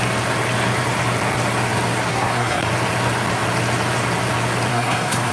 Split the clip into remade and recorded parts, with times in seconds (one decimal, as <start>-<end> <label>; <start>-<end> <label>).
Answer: 0.0-2.1 recorded; 2.1-2.7 remade; 2.7-4.7 recorded; 4.7-5.3 remade